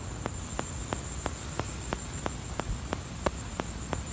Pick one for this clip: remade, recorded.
recorded